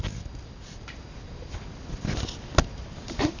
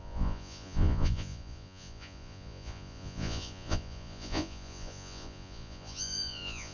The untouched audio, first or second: first